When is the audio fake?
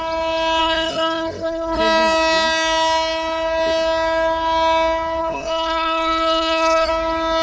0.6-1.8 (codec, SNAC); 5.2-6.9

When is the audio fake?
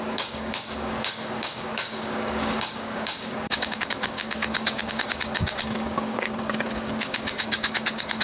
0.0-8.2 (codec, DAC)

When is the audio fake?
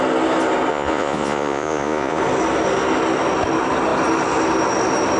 0.7-2.2 (vocoder, Vocos)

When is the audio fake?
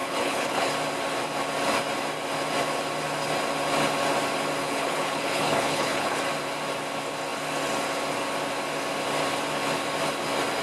0.0-0.7 (codec, HILCodec); 4.6-6.2